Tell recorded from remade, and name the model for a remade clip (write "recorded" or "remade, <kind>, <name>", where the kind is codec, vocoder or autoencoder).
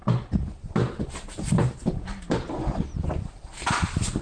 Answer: recorded